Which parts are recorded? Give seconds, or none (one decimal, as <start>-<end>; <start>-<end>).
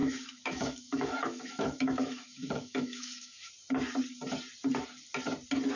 3.5-5.8